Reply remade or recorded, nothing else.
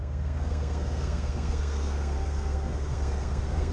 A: remade